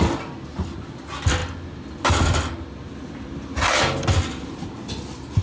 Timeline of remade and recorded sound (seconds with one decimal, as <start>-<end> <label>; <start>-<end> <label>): 0.0-5.4 recorded